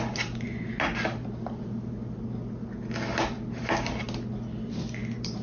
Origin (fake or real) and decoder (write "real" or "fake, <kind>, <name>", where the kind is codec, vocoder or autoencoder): real